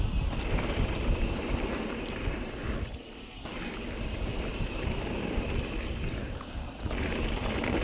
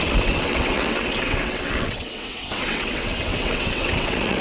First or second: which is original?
first